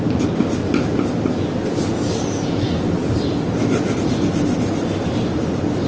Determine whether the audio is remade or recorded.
recorded